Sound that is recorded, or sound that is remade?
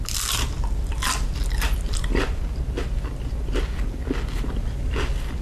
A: recorded